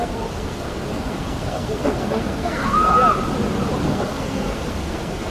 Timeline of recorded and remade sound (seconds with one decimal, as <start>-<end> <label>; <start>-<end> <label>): 0.0-2.9 remade; 2.9-3.8 recorded; 3.8-5.3 remade